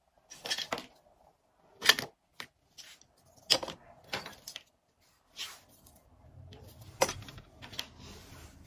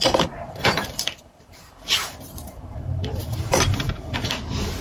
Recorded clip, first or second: first